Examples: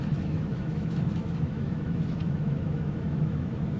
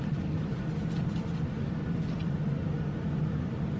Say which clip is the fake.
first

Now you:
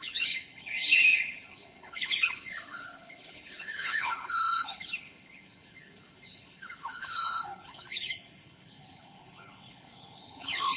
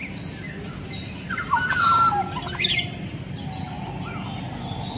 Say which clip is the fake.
first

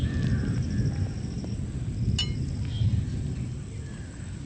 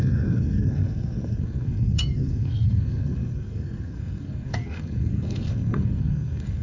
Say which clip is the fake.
second